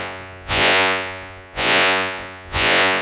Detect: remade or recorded remade